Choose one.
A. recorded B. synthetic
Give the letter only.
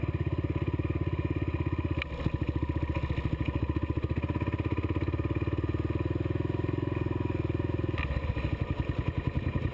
A